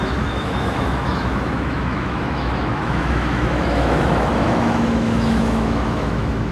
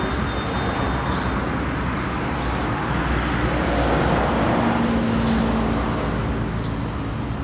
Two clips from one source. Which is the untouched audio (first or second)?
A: second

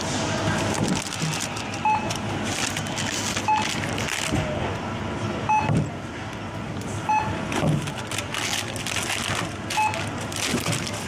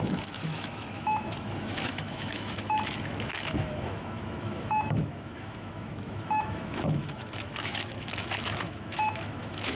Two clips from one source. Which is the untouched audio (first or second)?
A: first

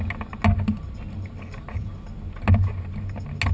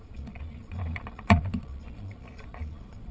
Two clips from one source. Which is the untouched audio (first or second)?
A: first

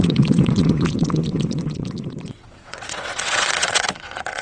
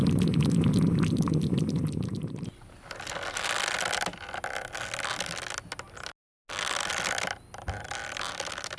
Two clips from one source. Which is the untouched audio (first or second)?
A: second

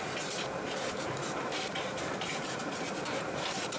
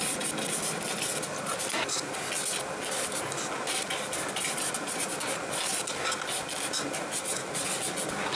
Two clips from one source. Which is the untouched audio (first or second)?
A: second